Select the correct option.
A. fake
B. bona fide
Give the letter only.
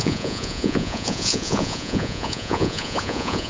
A